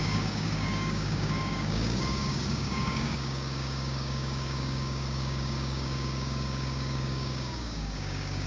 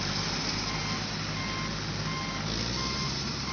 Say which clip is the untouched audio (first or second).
second